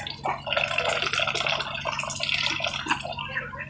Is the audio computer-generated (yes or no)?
no